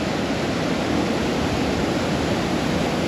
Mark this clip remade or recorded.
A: recorded